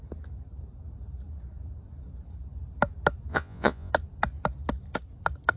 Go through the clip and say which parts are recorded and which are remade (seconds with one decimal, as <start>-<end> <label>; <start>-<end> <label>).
0.0-3.3 recorded; 3.3-3.9 remade; 3.9-5.6 recorded